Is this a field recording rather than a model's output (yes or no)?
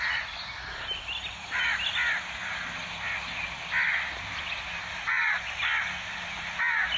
yes